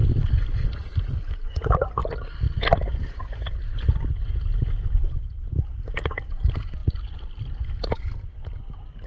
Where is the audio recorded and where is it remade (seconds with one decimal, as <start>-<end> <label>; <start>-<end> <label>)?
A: 0.0-6.8 recorded; 6.8-7.4 remade; 7.4-9.1 recorded